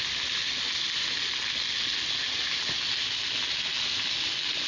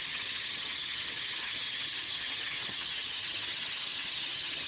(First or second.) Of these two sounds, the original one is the first